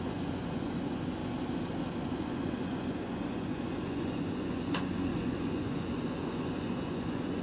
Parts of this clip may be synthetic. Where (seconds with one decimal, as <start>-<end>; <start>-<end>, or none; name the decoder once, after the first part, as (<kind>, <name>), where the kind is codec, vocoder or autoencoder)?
0.0-1.2 (vocoder, Vocos); 2.0-7.4